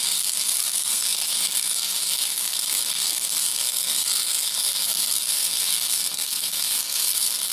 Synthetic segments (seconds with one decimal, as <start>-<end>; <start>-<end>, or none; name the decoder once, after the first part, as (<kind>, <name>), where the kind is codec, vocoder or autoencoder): 0.0-7.5 (codec, SNAC)